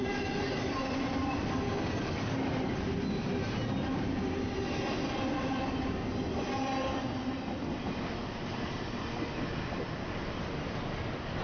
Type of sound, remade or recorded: recorded